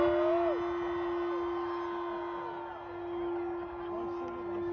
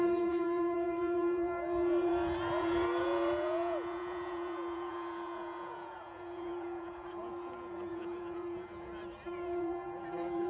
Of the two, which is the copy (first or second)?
second